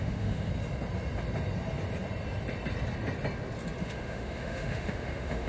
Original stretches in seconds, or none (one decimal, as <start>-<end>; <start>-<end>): 0.5-3.8